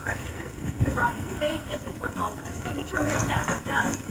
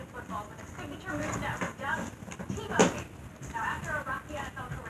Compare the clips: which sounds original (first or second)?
second